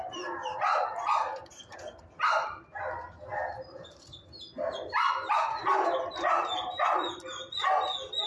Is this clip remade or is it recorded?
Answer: recorded